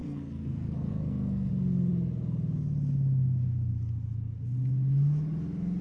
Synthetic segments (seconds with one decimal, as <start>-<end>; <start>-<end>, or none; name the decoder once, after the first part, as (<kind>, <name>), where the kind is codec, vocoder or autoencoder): 0.0-1.5 (codec, SNAC)